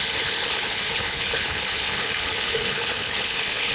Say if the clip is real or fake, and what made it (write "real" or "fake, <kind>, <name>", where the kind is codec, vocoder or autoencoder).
fake, codec, HILCodec